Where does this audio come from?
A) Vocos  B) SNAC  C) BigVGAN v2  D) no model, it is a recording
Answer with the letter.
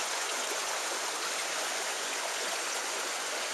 A